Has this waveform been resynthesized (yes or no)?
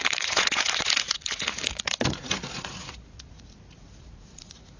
yes